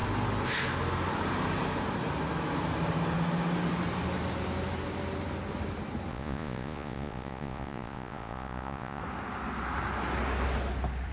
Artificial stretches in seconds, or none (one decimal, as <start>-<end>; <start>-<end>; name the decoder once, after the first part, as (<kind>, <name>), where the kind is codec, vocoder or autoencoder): 6.1-9.0 (vocoder, Vocos)